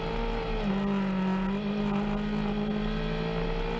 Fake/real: real